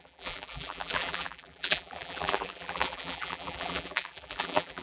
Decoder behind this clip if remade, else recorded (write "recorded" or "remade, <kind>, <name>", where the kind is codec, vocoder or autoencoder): remade, vocoder, BigVGAN v2